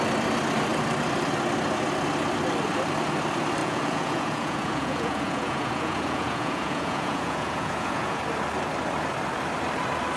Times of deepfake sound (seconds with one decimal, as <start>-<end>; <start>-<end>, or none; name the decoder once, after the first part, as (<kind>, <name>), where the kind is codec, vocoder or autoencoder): 3.6-8.2 (vocoder, Vocos)